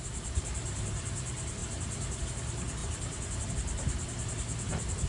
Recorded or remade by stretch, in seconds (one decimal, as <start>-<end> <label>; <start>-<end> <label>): 0.0-5.1 recorded